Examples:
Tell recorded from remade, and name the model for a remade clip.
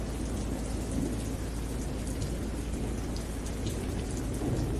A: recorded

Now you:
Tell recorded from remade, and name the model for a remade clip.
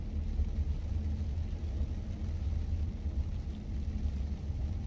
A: recorded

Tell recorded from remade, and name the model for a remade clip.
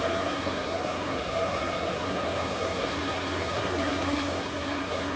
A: remade, codec, SNAC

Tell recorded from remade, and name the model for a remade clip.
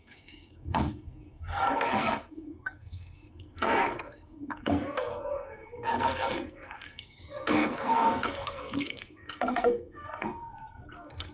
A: remade, codec, SNAC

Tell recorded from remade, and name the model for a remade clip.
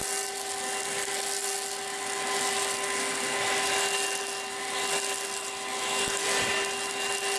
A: recorded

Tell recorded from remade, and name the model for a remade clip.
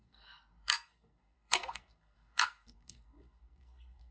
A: remade, codec, SNAC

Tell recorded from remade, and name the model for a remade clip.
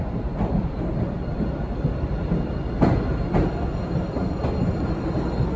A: recorded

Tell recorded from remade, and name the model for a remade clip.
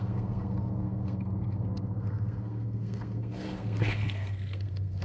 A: remade, codec, SNAC